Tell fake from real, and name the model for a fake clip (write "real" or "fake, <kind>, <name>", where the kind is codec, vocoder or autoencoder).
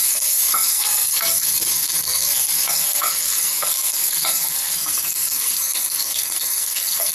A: fake, codec, SNAC